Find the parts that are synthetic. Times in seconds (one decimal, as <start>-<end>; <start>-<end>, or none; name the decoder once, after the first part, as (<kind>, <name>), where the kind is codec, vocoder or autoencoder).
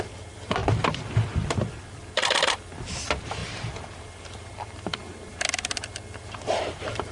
0.0-3.4 (vocoder, BigVGAN v2); 4.0-5.0; 6.2-7.1